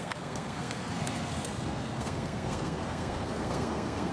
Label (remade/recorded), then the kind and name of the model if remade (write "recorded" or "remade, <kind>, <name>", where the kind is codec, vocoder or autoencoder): remade, codec, SNAC